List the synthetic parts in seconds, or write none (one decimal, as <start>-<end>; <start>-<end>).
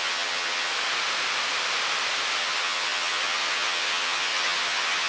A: 0.0-0.7; 2.4-5.1